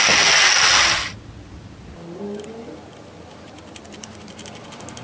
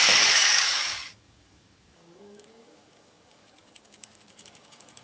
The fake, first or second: second